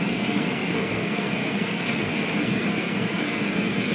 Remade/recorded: remade